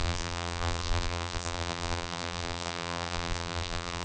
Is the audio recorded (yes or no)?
no